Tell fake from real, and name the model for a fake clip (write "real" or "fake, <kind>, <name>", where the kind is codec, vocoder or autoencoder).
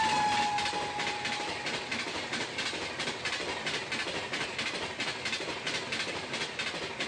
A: real